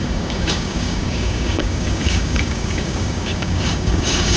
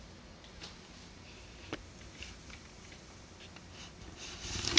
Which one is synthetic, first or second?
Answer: first